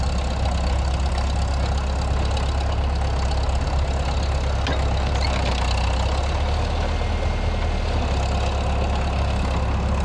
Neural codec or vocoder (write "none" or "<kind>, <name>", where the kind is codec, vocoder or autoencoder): none